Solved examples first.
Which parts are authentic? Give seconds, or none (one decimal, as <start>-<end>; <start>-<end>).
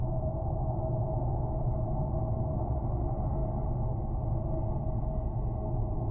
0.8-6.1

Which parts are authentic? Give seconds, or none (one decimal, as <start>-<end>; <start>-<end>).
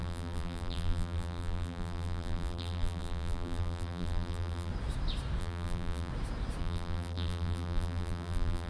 4.7-5.4; 6.1-6.6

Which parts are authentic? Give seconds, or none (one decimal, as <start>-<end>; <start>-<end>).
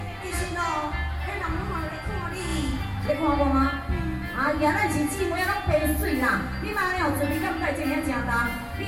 0.0-8.9